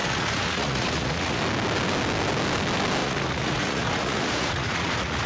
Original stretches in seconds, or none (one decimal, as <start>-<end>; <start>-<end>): 1.4-3.0